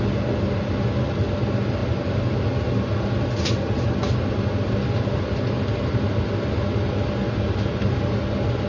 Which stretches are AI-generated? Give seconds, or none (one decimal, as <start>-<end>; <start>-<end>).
none